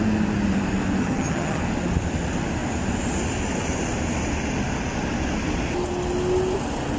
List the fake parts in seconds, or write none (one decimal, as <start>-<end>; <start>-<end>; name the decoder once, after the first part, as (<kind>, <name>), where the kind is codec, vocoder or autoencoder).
1.0-1.6 (vocoder, HiFi-GAN)